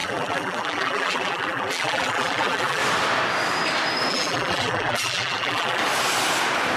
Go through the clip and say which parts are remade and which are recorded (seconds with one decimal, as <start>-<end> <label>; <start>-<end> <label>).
0.0-2.8 remade; 2.8-4.1 recorded; 4.1-5.8 remade; 5.8-6.8 recorded